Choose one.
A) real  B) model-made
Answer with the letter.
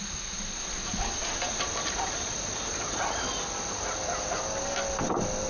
A